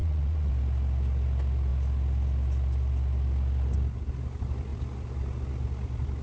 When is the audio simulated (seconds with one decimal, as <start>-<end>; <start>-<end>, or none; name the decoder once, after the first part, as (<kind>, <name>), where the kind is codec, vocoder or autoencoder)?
0.0-0.5 (vocoder, WaveNeXt)